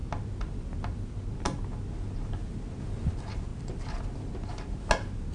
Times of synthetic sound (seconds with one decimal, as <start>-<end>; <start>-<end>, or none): none